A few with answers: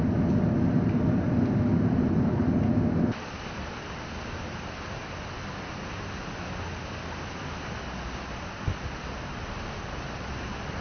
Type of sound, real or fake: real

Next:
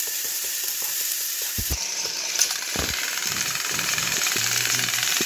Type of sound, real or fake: fake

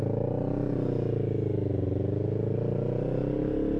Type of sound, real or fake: real